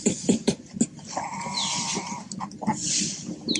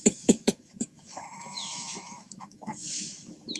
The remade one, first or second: second